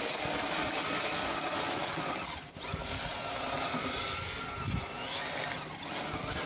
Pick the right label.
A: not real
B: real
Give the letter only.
B